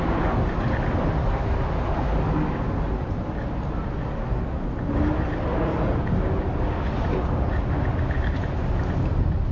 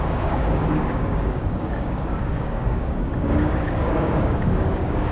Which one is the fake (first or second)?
second